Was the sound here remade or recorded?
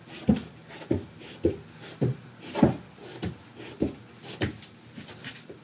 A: recorded